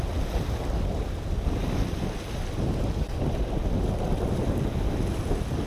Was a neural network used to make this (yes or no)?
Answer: no